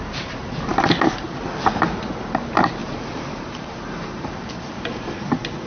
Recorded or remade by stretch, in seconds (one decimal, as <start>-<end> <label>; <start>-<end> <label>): 0.0-2.8 recorded; 2.8-4.5 remade; 4.5-5.7 recorded